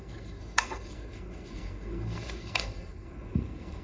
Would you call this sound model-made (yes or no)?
yes